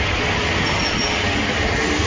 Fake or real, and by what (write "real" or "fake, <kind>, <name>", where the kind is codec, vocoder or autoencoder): real